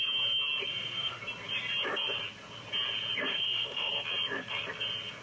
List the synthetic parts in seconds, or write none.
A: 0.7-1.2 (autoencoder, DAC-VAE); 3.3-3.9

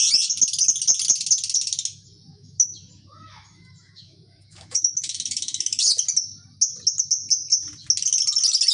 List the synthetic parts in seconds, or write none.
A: 2.3-5.9 (autoencoder, DAC-VAE)

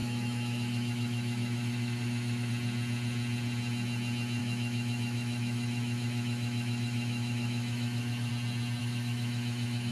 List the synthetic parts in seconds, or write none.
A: 0.0-2.5 (autoencoder, DAC-VAE); 4.4-8.3; 8.8-9.9

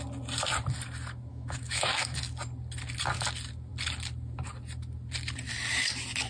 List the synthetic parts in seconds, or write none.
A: 1.3-2.2 (autoencoder, DAC-VAE)

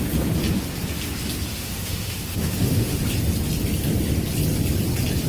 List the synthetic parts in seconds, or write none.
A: 1.5-3.0 (autoencoder, DAC-VAE)

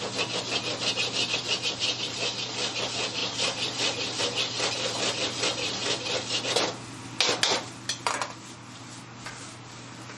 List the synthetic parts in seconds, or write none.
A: none

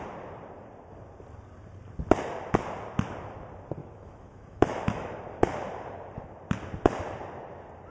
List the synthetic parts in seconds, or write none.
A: 3.8-5.2 (autoencoder, DAC-VAE)

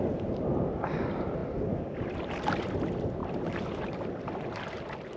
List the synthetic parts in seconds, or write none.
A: none